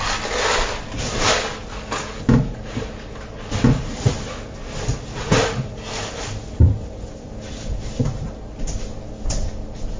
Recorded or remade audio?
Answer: recorded